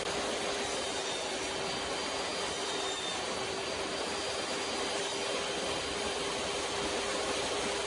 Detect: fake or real real